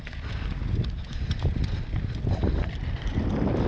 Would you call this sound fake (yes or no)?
no